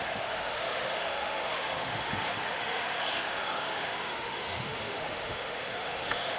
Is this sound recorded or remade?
remade